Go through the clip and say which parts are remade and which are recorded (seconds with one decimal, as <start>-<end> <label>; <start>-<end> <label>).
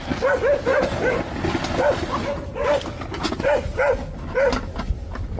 0.0-5.4 recorded